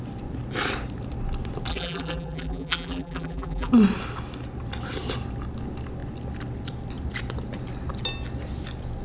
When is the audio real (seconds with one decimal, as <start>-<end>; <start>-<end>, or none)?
0.0-1.7; 3.7-9.0